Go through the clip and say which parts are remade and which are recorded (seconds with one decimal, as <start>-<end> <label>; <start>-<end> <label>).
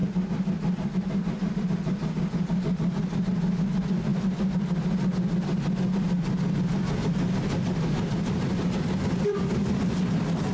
0.0-10.5 recorded